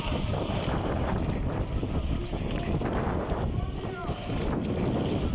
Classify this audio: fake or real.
real